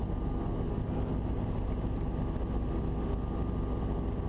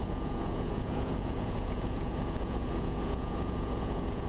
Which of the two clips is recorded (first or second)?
first